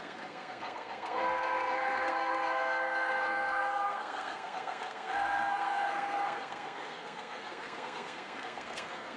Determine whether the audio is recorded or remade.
remade